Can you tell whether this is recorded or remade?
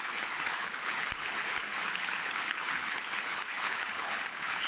remade